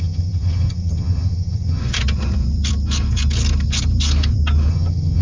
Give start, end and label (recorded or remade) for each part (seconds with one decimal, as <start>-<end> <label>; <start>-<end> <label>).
0.0-1.8 remade; 1.8-4.7 recorded; 4.7-5.2 remade